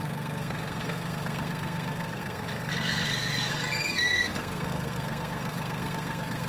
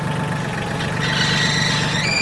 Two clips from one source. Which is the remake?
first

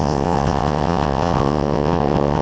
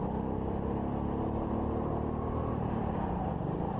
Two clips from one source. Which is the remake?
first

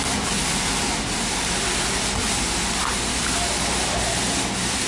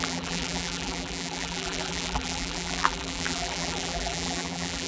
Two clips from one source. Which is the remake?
second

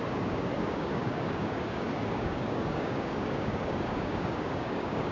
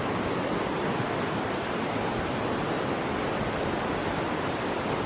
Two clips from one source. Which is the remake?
first